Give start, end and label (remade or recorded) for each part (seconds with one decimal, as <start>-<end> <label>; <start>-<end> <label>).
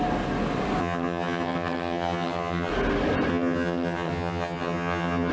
0.0-0.8 recorded; 0.8-2.7 remade; 2.7-3.3 recorded; 3.3-5.3 remade